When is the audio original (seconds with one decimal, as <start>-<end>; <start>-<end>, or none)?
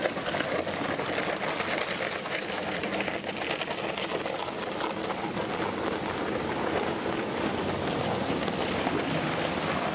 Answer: 0.0-9.9